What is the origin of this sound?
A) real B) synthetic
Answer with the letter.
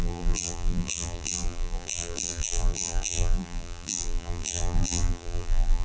B